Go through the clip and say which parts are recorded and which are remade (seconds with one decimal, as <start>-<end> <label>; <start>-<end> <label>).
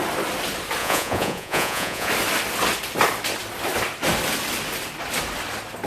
0.0-0.8 recorded; 0.8-2.1 remade; 2.1-5.9 recorded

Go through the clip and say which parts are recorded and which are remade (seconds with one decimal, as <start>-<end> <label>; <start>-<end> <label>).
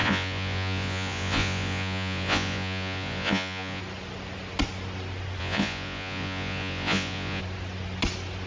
0.0-3.8 remade; 3.8-5.4 recorded; 5.4-7.4 remade; 7.4-8.5 recorded